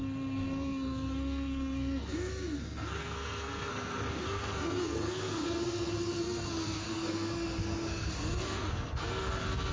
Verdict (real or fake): fake